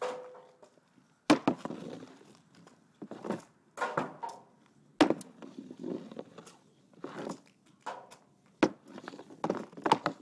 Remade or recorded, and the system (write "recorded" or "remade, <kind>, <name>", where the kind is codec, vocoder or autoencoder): recorded